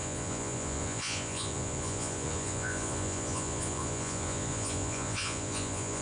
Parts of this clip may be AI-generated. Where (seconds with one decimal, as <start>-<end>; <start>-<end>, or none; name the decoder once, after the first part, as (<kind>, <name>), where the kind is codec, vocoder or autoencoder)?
0.0-6.0 (vocoder, Vocos)